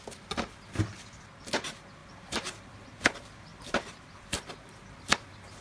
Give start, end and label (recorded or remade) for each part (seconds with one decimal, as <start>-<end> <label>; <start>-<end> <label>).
0.0-3.5 recorded; 3.5-4.5 remade; 4.5-5.6 recorded